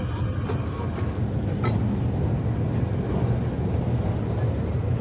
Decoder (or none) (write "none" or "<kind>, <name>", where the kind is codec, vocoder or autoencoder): none